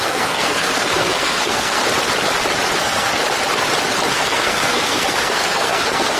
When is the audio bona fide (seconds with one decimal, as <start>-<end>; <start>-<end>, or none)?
1.8-2.8; 3.2-4.1

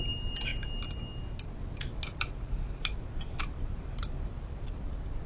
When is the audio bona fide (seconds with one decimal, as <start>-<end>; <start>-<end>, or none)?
0.0-5.3

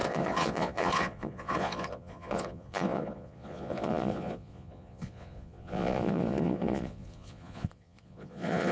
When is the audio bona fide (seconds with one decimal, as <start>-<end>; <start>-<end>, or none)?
none

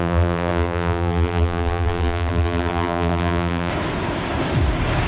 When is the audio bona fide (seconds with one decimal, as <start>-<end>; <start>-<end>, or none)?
3.7-5.1

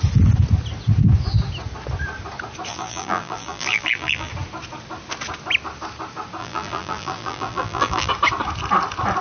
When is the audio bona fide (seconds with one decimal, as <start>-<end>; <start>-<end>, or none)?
0.0-2.7; 4.3-6.4; 8.1-9.2

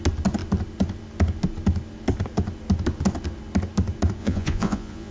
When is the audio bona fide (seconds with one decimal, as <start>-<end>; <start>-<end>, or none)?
0.0-4.2

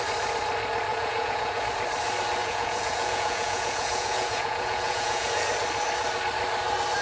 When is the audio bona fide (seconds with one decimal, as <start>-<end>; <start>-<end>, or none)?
0.0-0.9; 1.6-2.4; 5.4-7.0